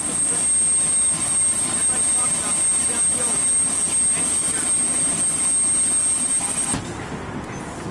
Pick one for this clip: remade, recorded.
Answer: recorded